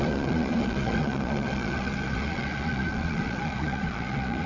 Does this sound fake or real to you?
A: fake